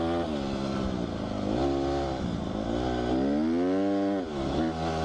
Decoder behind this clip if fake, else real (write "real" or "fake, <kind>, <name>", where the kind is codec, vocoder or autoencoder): real